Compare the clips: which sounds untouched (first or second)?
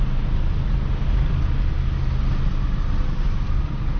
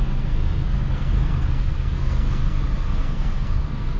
first